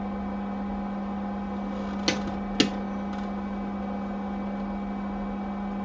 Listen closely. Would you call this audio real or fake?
real